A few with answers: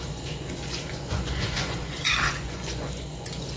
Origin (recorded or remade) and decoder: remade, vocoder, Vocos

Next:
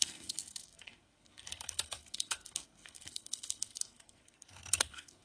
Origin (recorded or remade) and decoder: remade, codec, SNAC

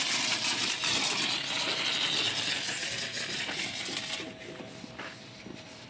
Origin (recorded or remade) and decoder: recorded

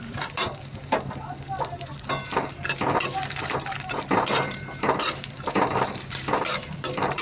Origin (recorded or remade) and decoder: remade, vocoder, BigVGAN v2